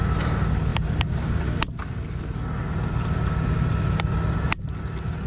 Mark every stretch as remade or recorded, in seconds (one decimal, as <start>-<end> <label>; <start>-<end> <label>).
0.0-5.3 recorded